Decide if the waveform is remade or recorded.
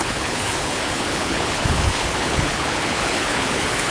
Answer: remade